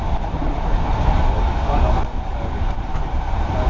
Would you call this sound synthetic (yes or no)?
no